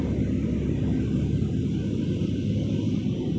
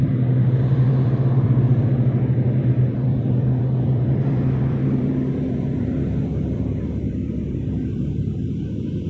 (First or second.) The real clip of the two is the first